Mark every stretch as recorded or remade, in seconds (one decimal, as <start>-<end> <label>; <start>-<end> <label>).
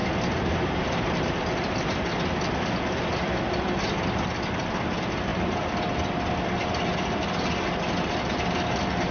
0.0-0.8 remade; 0.8-5.3 recorded; 5.3-6.6 remade; 6.6-9.1 recorded